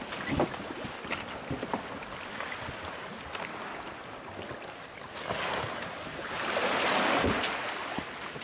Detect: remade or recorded recorded